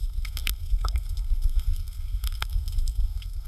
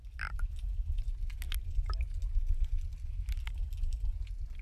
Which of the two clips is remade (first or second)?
first